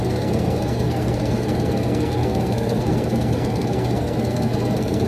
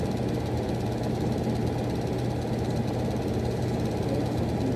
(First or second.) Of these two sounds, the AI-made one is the first